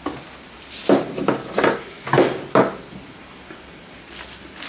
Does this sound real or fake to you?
real